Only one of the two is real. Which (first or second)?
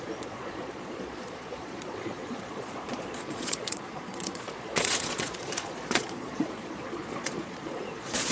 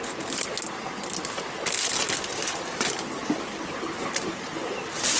second